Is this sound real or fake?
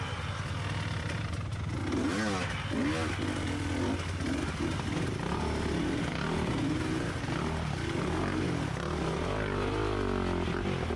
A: real